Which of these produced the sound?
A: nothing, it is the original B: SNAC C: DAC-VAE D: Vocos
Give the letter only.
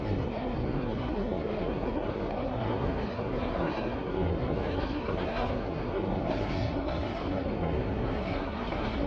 B